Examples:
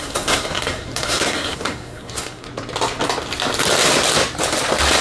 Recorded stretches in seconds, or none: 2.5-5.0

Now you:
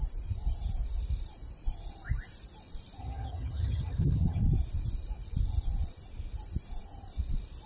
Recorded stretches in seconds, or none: 0.0-3.0; 4.4-7.7

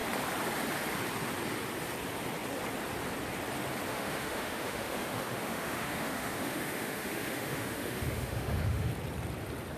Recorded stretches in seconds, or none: 0.0-3.9; 8.9-9.8